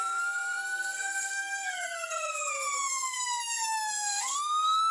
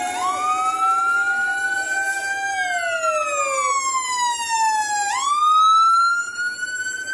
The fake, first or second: first